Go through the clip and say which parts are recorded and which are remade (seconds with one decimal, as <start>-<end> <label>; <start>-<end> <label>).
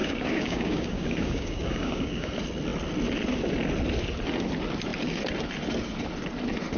0.0-2.3 remade; 2.3-6.8 recorded